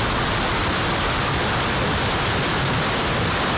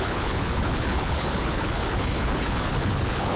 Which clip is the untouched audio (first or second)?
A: first